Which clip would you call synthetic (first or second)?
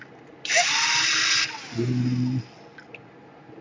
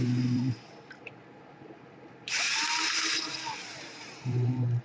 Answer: second